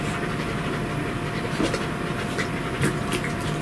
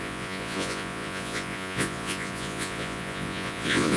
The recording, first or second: first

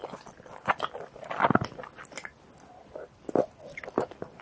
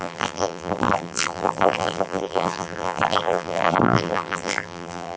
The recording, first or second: first